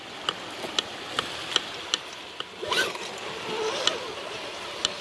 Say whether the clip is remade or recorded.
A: recorded